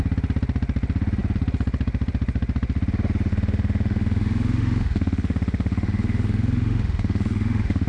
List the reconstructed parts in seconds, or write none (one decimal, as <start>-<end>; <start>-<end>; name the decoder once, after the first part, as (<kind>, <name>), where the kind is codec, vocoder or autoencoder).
3.3-7.9 (autoencoder, DAC-VAE)